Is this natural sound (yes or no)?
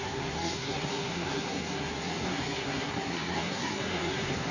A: no